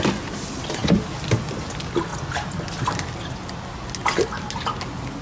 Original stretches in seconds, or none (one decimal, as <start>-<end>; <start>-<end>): 0.0-5.2